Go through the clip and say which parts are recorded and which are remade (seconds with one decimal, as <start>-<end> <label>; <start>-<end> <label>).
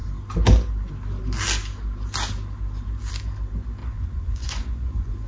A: 0.0-3.8 recorded; 3.8-5.3 remade